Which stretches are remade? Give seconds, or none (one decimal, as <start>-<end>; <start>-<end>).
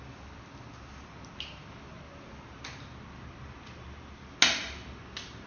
none